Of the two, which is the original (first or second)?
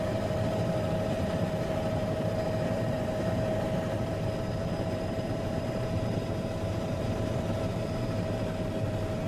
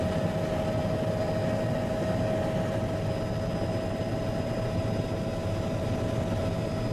second